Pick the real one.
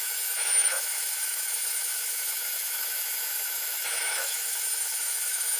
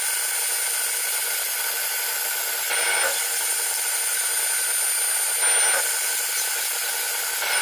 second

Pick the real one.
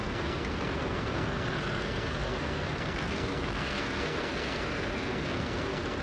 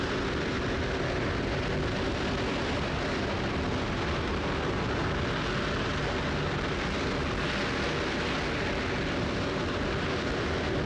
second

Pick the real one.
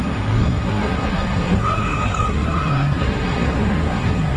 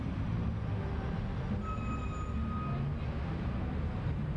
second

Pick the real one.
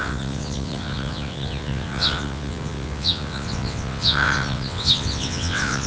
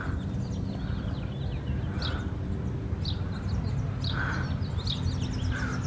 second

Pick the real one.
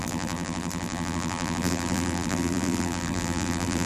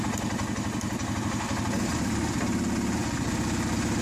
second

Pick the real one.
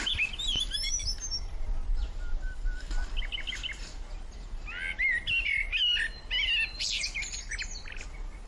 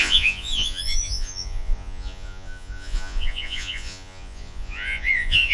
first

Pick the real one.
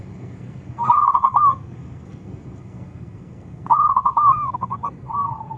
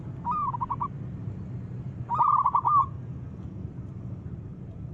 second